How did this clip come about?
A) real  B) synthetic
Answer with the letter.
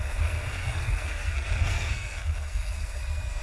B